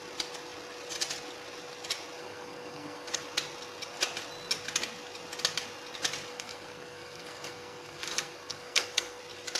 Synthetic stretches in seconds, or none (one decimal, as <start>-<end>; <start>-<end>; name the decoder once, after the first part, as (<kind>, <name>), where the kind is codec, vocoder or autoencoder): 2.2-3.2 (codec, SNAC); 6.3-9.2